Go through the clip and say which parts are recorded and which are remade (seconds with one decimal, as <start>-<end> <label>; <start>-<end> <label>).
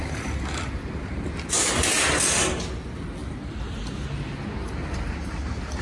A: 0.0-5.8 recorded